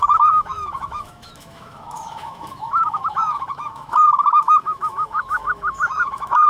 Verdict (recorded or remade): remade